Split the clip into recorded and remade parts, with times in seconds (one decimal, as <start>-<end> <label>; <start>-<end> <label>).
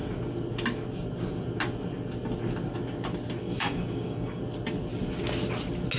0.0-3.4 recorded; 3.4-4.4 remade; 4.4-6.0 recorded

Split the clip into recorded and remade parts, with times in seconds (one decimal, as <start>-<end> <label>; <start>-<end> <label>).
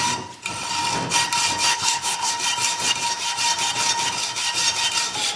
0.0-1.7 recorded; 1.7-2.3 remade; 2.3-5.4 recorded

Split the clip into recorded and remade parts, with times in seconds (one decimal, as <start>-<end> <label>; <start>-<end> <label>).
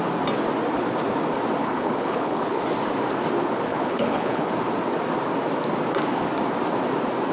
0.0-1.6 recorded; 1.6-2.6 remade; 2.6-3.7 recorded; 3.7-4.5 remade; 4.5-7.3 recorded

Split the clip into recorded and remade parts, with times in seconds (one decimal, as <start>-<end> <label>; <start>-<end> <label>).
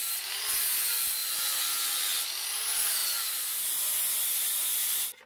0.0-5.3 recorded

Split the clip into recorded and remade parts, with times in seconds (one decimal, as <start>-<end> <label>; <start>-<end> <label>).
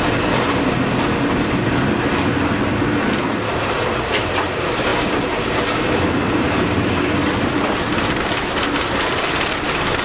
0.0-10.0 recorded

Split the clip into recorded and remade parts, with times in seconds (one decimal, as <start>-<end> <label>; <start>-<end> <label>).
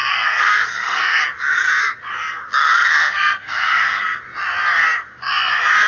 0.0-1.2 remade; 1.2-2.6 recorded; 2.6-4.2 remade; 4.2-5.9 recorded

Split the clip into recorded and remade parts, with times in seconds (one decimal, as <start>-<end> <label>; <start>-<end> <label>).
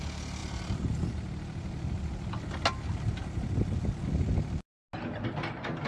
0.0-5.9 recorded